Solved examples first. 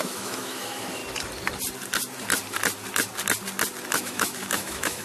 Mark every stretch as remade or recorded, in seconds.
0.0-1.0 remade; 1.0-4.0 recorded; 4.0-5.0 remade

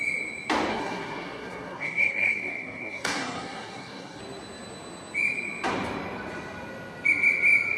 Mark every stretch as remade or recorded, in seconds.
0.0-0.7 recorded; 0.7-4.2 remade; 4.2-7.8 recorded